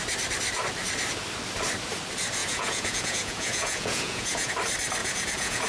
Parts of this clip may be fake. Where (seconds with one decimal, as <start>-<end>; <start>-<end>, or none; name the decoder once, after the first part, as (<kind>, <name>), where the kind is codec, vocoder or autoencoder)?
2.4-4.5 (vocoder, Vocos); 5.0-5.7